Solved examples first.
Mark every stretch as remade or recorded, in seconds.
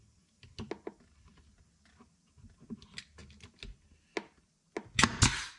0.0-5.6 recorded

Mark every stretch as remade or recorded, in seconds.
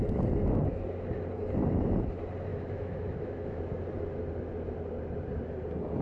0.0-2.5 recorded; 2.5-3.6 remade; 3.6-6.0 recorded